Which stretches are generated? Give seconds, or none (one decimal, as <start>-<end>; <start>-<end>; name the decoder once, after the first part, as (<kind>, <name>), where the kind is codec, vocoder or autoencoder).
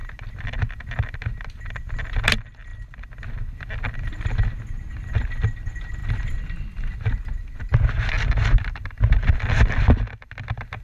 none